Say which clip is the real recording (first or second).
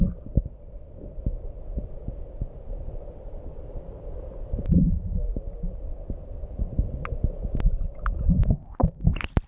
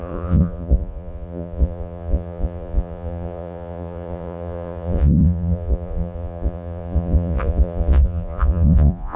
first